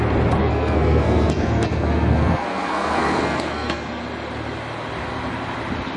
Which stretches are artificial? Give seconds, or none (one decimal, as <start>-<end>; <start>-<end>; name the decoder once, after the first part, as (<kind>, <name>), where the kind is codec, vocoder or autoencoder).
0.4-4.0 (codec, SNAC)